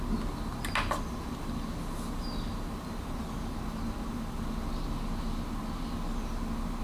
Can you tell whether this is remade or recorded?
recorded